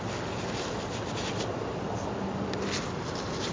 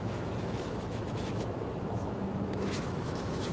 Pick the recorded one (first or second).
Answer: first